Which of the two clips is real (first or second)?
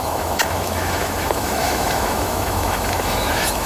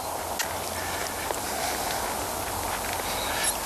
second